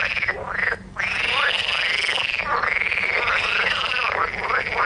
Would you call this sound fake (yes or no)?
no